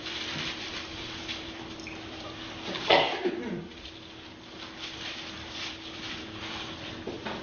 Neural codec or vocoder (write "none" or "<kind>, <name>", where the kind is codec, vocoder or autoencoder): vocoder, BigVGAN v2